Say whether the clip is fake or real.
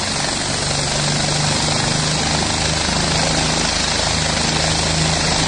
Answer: real